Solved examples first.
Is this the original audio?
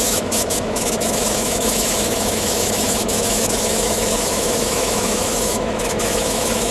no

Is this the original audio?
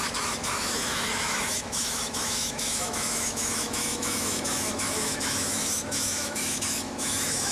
no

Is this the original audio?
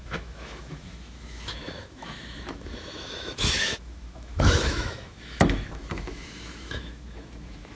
no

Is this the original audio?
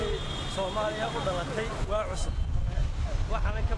yes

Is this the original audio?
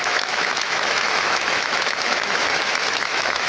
no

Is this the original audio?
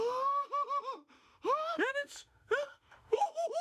no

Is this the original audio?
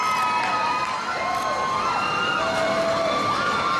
yes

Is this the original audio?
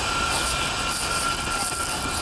yes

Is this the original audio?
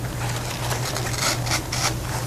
yes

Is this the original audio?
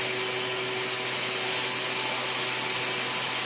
yes